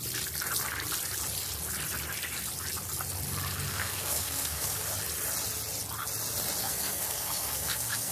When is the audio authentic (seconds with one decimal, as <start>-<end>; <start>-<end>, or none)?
0.0-3.7; 4.8-6.6